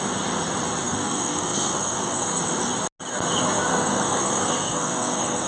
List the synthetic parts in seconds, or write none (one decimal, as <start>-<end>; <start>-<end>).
0.8-2.4; 3.7-5.5